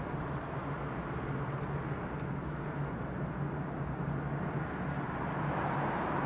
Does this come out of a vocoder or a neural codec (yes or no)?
no